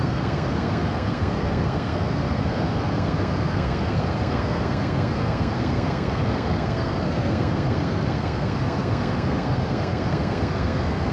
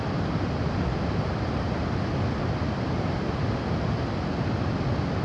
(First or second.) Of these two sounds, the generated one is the first